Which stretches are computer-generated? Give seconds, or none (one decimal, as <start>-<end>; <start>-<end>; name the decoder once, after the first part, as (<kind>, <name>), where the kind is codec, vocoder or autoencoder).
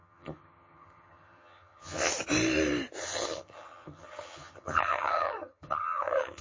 0.0-2.1 (vocoder, HiFi-GAN); 3.0-6.4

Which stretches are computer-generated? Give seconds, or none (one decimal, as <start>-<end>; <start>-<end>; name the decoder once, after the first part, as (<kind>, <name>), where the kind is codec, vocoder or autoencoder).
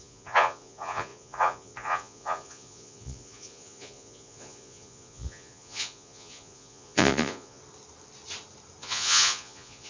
0.0-7.6 (vocoder, Vocos); 8.8-9.9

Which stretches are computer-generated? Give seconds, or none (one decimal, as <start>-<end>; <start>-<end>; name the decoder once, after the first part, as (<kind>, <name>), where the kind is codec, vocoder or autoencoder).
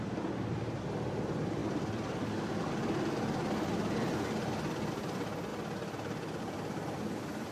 0.0-7.5 (vocoder, BigVGAN v2)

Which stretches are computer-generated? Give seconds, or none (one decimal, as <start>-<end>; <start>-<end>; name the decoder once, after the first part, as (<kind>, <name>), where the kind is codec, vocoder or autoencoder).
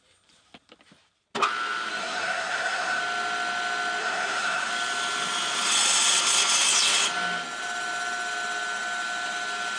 2.0-3.0 (codec, SNAC); 4.0-4.7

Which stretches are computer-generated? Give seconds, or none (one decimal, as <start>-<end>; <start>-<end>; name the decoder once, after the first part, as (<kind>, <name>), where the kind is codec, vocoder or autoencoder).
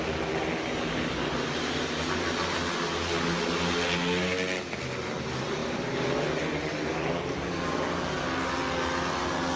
none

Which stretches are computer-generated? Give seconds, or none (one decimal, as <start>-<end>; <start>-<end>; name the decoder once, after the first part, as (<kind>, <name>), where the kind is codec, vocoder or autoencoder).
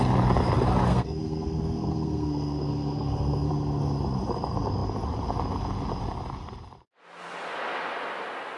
0.9-3.5 (codec, SNAC)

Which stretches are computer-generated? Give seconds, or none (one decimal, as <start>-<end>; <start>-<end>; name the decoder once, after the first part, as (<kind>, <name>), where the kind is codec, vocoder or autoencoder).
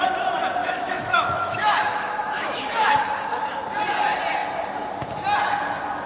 0.6-3.4 (autoencoder, DAC-VAE)